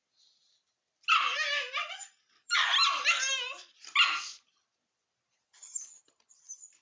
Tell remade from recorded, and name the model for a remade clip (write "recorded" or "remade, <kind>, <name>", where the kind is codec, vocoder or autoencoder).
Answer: recorded